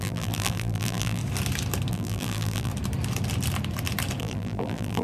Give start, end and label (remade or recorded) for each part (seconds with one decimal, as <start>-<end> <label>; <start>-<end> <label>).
0.0-1.2 remade; 1.2-1.9 recorded; 1.9-2.7 remade; 2.7-4.2 recorded; 4.2-5.0 remade